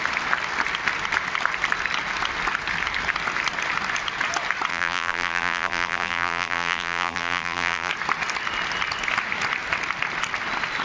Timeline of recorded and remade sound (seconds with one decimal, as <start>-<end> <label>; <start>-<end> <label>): 0.0-4.7 recorded; 4.7-7.9 remade; 7.9-10.8 recorded